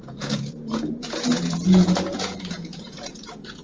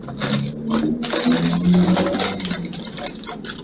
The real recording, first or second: second